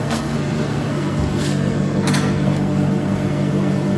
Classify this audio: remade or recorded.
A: remade